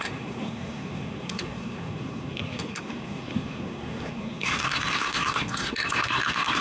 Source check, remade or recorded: remade